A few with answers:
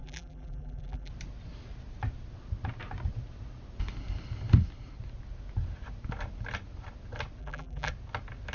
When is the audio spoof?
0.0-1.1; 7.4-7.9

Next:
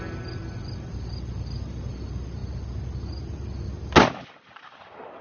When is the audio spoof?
0.0-2.4; 4.2-5.2

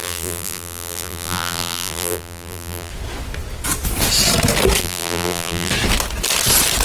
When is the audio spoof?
0.0-2.9; 4.8-5.7

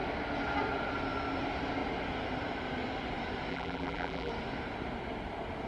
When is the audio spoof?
3.5-4.3

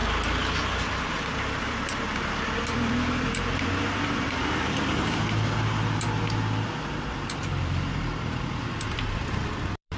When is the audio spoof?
0.7-10.0

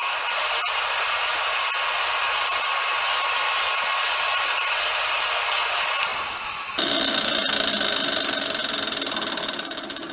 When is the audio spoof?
0.0-6.1; 7.7-8.6; 9.5-10.1

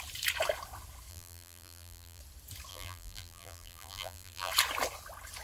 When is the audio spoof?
1.1-2.2; 2.7-4.5

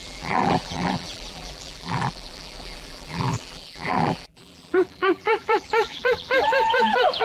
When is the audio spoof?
0.0-7.2